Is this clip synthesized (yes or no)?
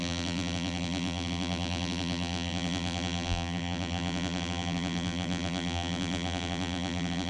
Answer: yes